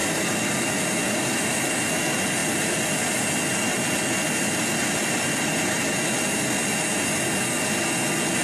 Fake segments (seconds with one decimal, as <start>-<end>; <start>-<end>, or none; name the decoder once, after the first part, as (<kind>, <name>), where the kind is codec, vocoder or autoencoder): 0.0-1.7 (vocoder, BigVGAN v2)